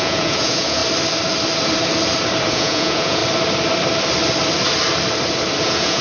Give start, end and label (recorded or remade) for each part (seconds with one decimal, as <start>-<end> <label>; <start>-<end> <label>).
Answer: 0.0-0.8 remade; 0.8-2.5 recorded; 2.5-3.2 remade; 3.2-5.6 recorded; 5.6-6.0 remade